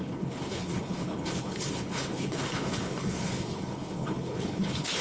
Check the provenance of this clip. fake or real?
fake